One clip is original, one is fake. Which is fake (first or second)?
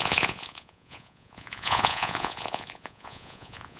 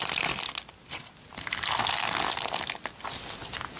first